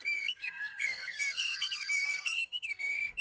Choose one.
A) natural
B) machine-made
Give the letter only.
B